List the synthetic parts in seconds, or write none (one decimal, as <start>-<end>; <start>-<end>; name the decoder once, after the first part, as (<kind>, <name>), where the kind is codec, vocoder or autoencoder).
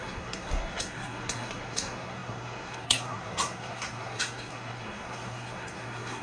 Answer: 0.0-6.2 (codec, SNAC)